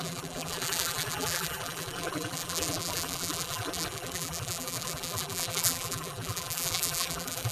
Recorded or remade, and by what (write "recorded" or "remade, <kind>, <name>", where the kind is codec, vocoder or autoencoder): remade, vocoder, BigVGAN v2